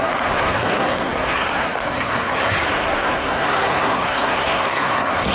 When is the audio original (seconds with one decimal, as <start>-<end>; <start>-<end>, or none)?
none